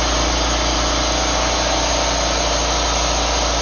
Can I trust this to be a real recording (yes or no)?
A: yes